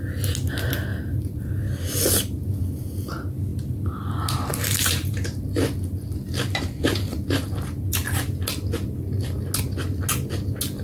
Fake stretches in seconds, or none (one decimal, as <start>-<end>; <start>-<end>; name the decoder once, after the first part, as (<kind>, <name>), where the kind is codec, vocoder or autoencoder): 0.9-1.6 (vocoder, BigVGAN v2); 4.5-5.4